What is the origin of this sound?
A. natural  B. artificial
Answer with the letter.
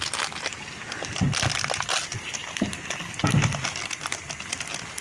A